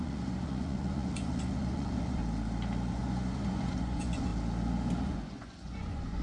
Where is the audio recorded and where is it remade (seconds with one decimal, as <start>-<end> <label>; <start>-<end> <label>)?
0.0-2.2 remade; 2.2-2.9 recorded; 2.9-4.3 remade; 4.3-5.0 recorded; 5.0-6.2 remade